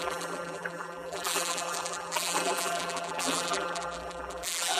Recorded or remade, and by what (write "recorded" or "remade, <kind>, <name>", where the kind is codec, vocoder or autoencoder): remade, vocoder, BigVGAN v2